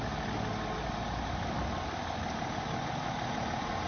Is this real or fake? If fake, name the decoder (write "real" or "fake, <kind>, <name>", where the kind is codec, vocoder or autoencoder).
real